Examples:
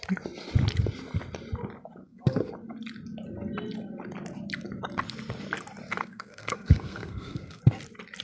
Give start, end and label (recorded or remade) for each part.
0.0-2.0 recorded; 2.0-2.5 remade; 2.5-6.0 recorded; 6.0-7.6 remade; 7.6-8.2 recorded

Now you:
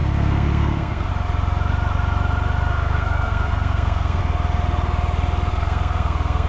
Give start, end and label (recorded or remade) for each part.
0.0-1.1 remade; 1.1-2.7 recorded; 2.7-4.2 remade; 4.2-5.5 recorded; 5.5-6.5 remade

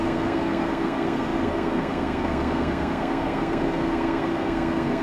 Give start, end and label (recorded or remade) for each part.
0.0-5.0 remade

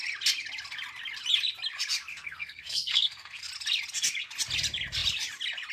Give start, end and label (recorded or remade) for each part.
0.0-2.1 recorded; 2.1-3.5 remade; 3.5-5.7 recorded

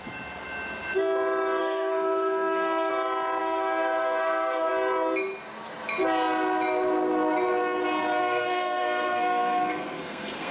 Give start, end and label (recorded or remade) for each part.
0.0-1.6 recorded; 1.6-2.9 remade; 2.9-3.4 recorded; 3.4-4.7 remade; 4.7-8.2 recorded; 8.2-10.5 remade

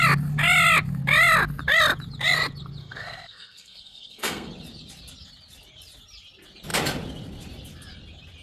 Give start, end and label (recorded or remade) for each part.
0.0-2.8 recorded; 2.8-4.5 remade; 4.5-8.4 recorded